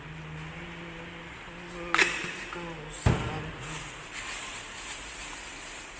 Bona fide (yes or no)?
yes